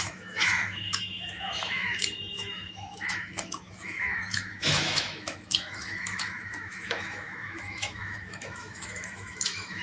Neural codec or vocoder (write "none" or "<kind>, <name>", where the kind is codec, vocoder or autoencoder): autoencoder, DAC-VAE